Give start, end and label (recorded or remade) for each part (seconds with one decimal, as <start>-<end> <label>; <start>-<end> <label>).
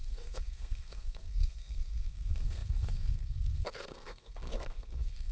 0.0-5.3 remade